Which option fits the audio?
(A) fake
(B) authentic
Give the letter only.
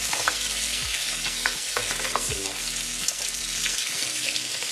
A